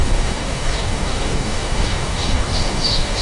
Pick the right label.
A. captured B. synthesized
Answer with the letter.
B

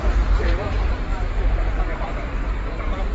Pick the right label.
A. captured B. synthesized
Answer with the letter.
B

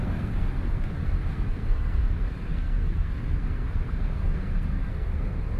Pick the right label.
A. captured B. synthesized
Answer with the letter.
B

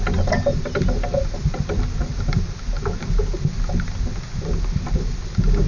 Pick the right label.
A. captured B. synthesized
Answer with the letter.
A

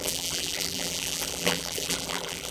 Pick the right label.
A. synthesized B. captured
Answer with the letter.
A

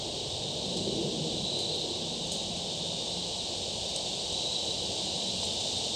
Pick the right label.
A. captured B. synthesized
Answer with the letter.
A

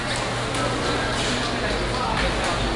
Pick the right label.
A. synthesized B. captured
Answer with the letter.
B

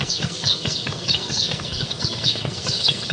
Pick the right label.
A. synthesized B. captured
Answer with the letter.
A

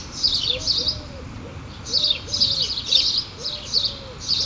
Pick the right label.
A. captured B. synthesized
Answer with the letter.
A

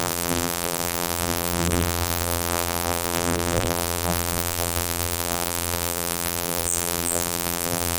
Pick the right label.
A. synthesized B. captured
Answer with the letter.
A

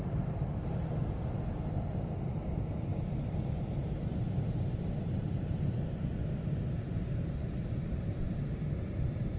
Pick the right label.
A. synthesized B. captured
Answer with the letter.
B